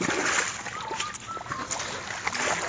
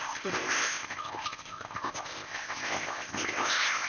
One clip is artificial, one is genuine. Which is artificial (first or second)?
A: second